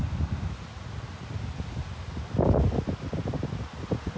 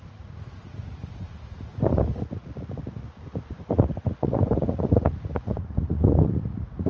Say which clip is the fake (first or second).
second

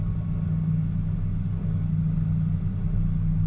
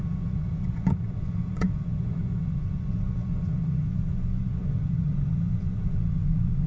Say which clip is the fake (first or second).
second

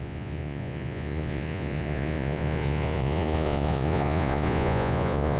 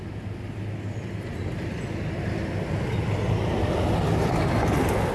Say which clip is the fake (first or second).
first